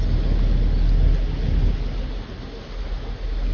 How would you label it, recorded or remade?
recorded